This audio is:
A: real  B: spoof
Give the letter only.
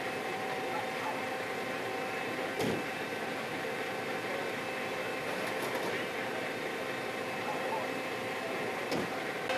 A